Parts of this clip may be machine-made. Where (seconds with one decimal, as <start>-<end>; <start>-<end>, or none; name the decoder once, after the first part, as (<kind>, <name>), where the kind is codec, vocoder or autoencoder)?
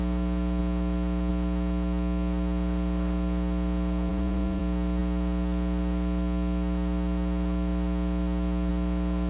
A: 4.1-4.6 (vocoder, Vocos)